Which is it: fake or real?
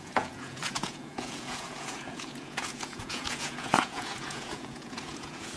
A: fake